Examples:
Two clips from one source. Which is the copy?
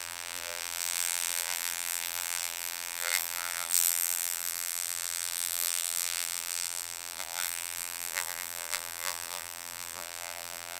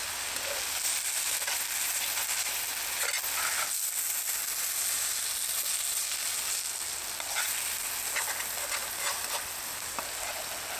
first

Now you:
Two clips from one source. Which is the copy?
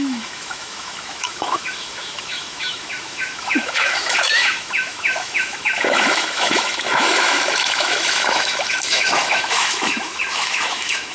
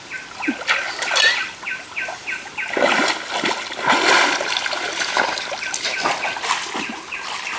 first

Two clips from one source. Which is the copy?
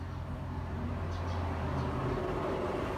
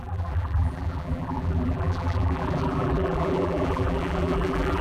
second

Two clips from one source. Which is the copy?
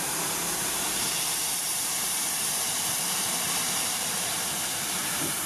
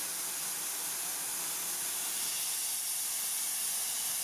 first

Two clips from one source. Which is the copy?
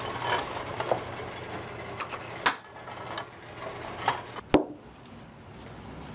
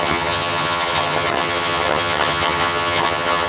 second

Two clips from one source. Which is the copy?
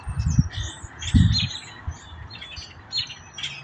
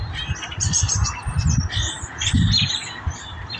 second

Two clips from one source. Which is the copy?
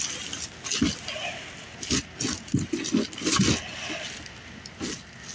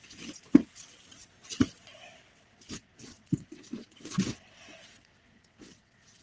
second